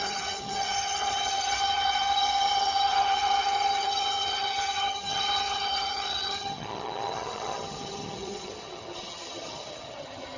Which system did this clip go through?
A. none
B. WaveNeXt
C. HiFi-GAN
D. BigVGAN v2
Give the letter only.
C